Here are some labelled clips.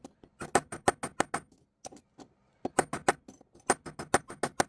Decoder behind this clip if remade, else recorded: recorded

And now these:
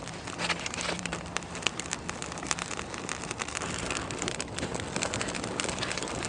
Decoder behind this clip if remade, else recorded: remade, vocoder, BigVGAN v2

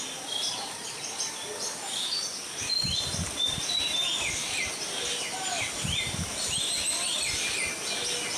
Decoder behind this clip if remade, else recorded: recorded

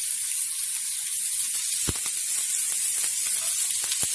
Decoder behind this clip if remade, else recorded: recorded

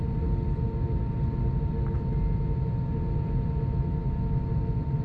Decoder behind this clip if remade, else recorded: recorded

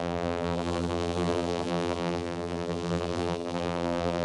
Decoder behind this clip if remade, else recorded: remade, vocoder, BigVGAN v2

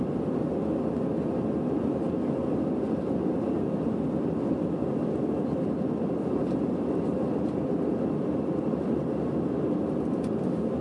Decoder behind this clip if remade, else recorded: recorded